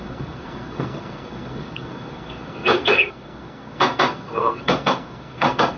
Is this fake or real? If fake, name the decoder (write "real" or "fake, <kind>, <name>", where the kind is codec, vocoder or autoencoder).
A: fake, codec, SNAC